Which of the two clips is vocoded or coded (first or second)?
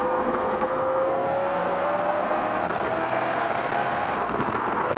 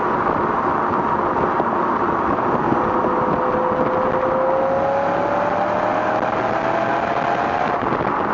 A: first